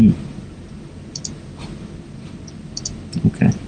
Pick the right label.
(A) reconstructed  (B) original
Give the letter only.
B